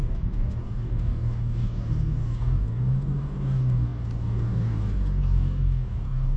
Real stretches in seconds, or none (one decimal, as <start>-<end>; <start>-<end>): none